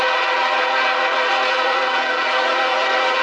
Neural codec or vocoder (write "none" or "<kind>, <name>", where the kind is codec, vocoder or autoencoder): vocoder, Vocos